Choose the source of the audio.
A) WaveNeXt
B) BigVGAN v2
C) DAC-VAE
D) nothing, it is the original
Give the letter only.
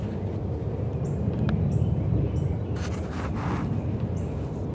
D